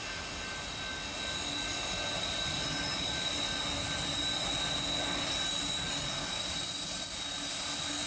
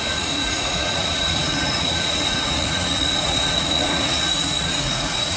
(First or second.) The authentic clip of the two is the first